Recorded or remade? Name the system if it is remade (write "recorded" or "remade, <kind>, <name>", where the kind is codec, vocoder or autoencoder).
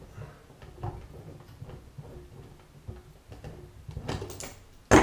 recorded